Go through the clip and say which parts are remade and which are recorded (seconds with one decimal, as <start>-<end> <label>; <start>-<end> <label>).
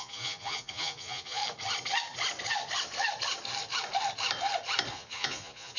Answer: 0.0-1.4 remade; 1.4-4.9 recorded; 4.9-5.8 remade